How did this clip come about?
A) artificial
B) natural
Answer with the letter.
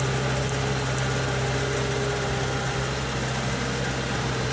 B